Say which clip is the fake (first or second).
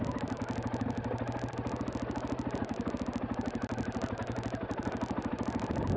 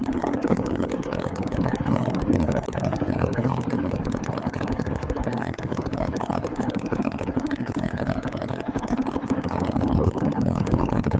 second